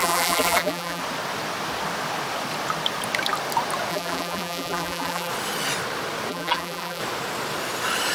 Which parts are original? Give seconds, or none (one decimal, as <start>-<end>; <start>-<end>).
1.0-3.9; 5.3-6.3; 7.0-8.1